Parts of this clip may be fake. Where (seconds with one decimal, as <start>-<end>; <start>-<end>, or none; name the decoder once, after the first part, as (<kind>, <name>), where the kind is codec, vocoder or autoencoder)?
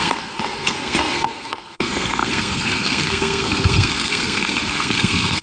0.0-5.4 (codec, SNAC)